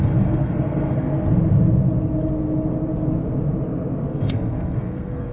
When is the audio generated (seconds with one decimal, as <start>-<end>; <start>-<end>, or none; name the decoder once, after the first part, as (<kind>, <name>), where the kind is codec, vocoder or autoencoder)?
0.0-1.1 (codec, SNAC); 4.1-5.3